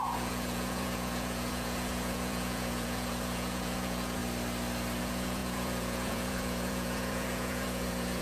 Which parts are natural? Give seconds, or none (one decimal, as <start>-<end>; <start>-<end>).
4.2-5.0